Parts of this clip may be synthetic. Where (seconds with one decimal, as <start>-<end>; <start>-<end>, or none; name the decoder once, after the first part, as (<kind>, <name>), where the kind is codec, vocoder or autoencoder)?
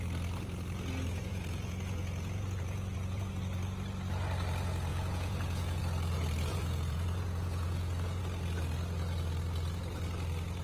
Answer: 1.3-3.3 (vocoder, Vocos); 4.9-5.8; 6.5-8.2